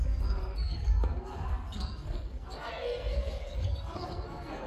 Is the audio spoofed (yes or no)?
yes